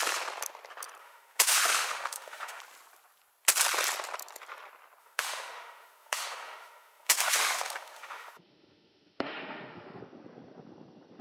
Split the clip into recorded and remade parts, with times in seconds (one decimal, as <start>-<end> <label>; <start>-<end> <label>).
0.0-1.0 recorded; 1.0-2.6 remade; 2.6-5.0 recorded; 5.0-10.0 remade; 10.0-11.2 recorded